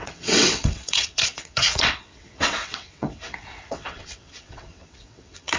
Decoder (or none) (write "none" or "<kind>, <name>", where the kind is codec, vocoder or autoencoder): vocoder, WaveNeXt